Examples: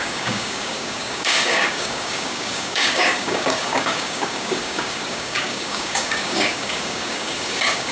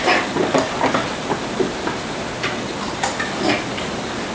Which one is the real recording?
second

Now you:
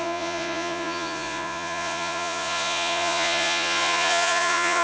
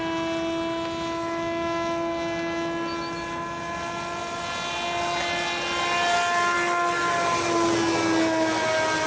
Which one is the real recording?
second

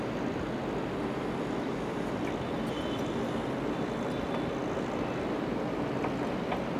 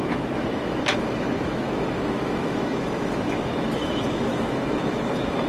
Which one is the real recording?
first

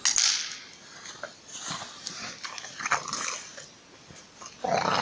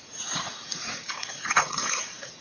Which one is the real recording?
first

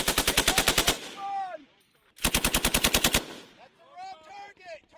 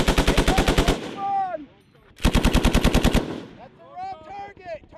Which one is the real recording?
second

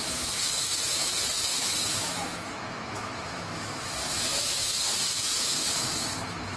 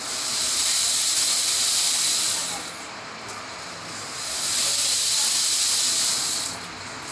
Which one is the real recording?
second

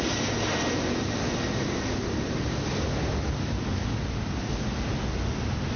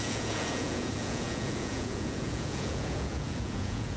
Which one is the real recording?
first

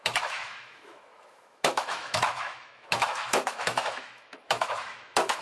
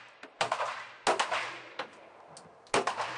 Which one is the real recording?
second